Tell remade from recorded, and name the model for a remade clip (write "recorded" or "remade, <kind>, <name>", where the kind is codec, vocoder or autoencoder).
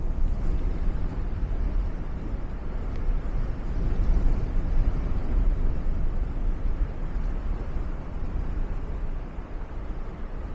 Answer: recorded